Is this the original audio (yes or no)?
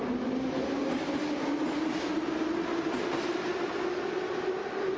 yes